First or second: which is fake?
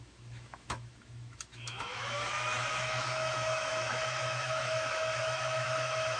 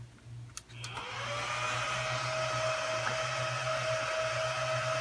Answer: first